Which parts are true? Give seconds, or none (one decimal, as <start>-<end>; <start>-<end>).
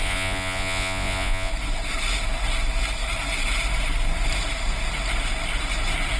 1.5-6.2